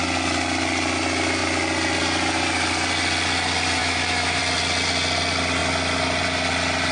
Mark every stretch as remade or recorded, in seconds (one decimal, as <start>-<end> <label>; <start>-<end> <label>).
0.0-3.8 recorded; 3.8-4.4 remade; 4.4-6.9 recorded